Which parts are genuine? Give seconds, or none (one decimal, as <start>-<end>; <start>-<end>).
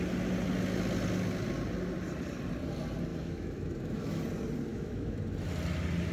0.0-3.1; 4.2-4.7; 5.2-6.1